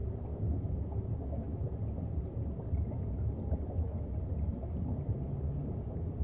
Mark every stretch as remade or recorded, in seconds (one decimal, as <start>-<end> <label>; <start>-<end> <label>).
0.0-6.2 recorded